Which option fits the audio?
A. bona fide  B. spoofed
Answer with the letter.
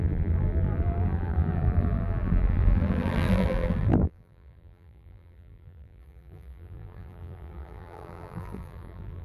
B